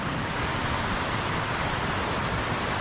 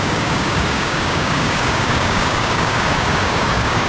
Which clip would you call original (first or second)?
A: first